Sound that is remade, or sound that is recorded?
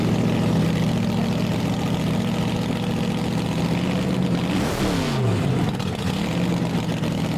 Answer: recorded